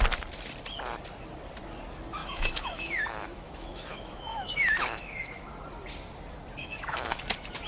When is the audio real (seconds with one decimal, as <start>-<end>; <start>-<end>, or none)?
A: 0.0-2.2; 5.5-6.6; 7.2-7.7